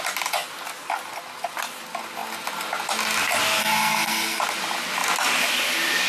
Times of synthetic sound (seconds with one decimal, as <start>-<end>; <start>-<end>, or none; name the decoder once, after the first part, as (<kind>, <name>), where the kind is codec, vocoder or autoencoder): 3.6-4.4 (codec, SNAC)